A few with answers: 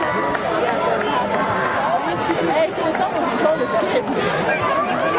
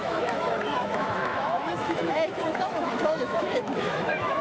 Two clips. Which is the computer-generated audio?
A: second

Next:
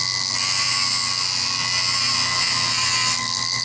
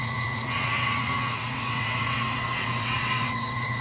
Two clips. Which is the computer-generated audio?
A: second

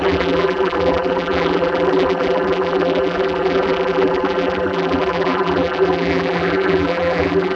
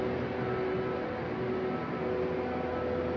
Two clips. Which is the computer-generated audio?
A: first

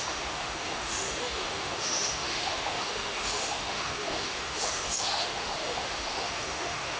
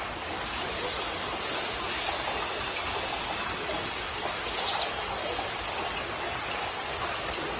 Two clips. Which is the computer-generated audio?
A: first